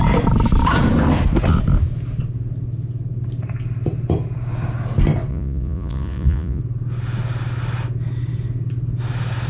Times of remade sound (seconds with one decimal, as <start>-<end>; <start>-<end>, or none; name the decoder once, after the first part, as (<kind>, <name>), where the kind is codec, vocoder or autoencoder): 5.3-6.6 (vocoder, Vocos)